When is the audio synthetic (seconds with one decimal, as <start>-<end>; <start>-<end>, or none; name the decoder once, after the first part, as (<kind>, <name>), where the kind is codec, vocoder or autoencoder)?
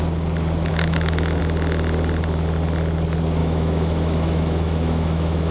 0.7-1.4 (autoencoder, DAC-VAE); 3.4-5.5